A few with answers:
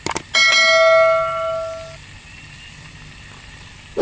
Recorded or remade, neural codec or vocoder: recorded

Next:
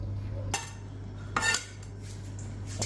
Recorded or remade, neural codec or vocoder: recorded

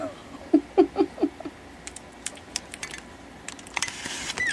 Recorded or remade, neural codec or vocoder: recorded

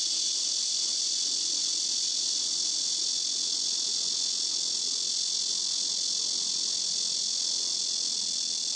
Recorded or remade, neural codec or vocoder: recorded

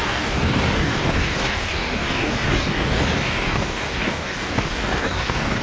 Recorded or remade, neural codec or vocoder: remade, codec, DAC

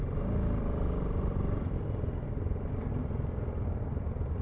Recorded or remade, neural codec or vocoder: recorded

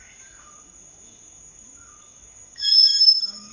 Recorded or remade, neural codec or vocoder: remade, codec, DAC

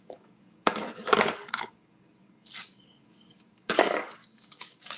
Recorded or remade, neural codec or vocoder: remade, codec, DAC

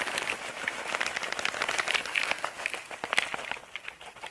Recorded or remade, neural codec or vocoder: recorded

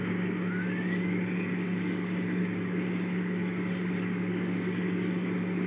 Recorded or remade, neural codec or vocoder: remade, codec, DAC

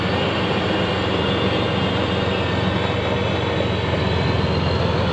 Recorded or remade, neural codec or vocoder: recorded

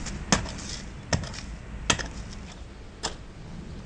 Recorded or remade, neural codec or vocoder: recorded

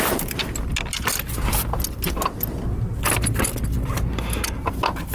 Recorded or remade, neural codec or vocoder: recorded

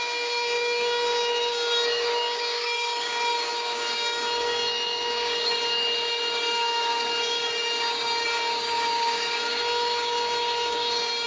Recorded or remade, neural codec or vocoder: remade, codec, DAC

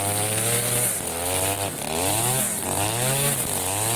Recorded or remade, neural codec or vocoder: recorded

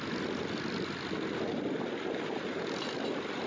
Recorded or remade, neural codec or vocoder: recorded